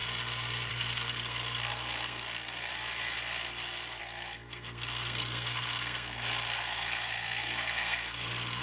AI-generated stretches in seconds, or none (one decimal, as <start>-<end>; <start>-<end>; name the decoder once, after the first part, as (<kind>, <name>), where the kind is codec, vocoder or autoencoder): 0.7-2.7 (codec, SNAC); 4.0-8.6